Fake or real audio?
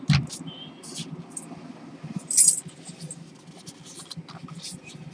real